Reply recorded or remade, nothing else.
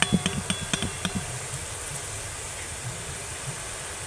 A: recorded